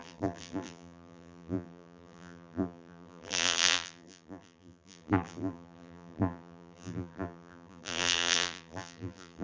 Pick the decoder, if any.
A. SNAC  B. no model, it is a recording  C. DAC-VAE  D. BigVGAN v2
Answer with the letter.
D